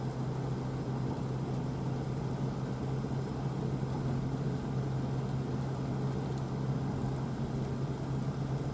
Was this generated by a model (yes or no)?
no